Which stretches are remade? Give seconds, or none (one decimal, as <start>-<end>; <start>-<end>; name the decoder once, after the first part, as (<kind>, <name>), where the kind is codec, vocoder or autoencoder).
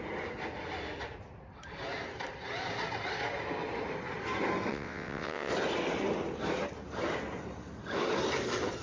4.7-5.5 (vocoder, WaveNeXt)